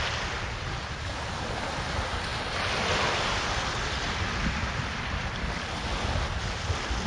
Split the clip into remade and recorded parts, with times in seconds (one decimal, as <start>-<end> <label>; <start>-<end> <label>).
0.0-7.1 recorded